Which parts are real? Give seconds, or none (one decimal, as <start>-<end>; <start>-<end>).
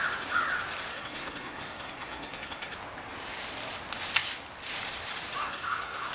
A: 0.0-0.9; 2.7-5.4